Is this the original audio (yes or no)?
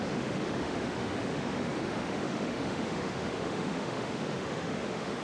no